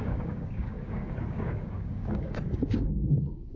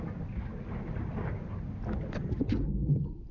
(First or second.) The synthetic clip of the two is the first